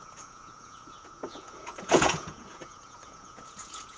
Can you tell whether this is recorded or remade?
remade